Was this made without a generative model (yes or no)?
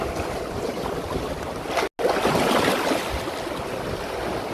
yes